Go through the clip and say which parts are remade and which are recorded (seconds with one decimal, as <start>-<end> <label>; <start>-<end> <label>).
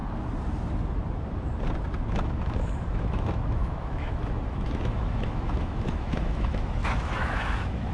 0.0-2.1 recorded; 2.1-7.9 remade